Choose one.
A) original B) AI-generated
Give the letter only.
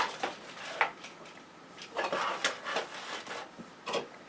A